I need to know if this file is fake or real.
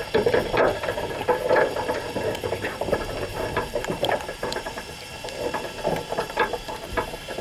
fake